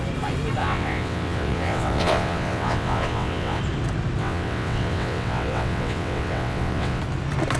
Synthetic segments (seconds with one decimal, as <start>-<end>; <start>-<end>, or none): 0.6-3.6; 4.2-7.0